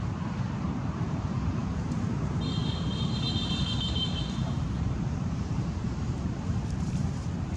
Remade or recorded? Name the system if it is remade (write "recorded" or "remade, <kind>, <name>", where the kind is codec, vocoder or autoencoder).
remade, vocoder, BigVGAN v2